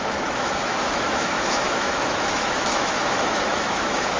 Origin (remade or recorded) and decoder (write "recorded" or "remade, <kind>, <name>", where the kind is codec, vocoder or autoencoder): remade, autoencoder, DAC-VAE